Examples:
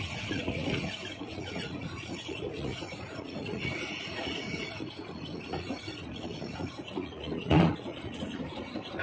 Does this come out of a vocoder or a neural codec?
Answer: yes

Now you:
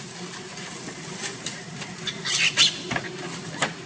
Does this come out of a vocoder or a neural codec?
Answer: no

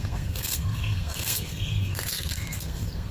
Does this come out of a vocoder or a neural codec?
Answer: yes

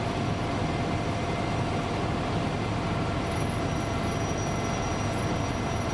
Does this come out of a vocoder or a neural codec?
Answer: no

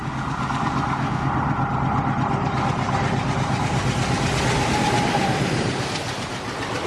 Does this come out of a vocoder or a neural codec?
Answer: no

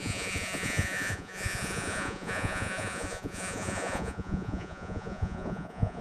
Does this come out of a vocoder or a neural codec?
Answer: yes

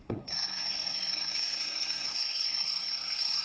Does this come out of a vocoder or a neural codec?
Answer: yes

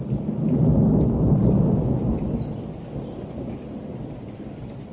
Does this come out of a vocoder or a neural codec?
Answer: no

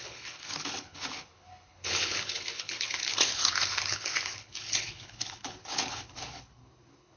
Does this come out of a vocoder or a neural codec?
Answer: yes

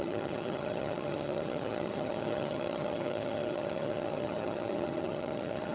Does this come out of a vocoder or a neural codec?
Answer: yes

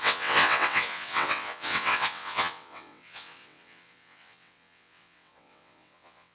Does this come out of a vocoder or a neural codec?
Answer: yes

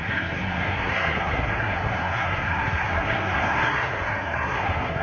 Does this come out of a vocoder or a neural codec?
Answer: yes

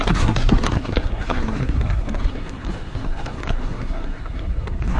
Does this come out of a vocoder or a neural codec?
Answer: yes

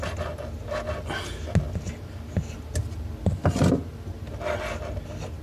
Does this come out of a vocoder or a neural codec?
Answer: no